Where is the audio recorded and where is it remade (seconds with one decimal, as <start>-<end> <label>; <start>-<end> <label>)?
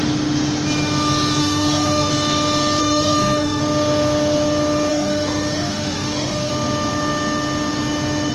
0.0-1.4 recorded; 1.4-2.1 remade; 2.1-2.8 recorded; 2.8-3.6 remade; 3.6-4.9 recorded; 4.9-6.5 remade; 6.5-8.3 recorded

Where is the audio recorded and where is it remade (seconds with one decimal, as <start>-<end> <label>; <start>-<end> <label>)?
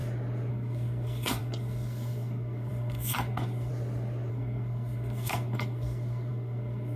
0.0-0.5 recorded; 0.5-3.7 remade; 3.7-4.3 recorded; 4.3-7.0 remade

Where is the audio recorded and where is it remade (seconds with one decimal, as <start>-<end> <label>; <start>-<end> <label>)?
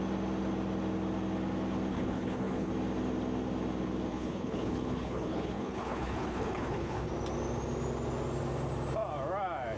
0.0-1.9 recorded; 1.9-2.7 remade; 2.7-4.1 recorded; 4.1-7.1 remade; 7.1-9.8 recorded